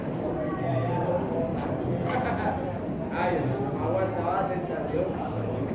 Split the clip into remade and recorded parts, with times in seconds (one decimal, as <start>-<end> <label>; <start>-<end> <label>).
0.0-1.5 remade; 1.5-4.9 recorded; 4.9-5.7 remade